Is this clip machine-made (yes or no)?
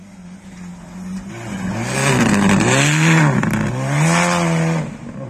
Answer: no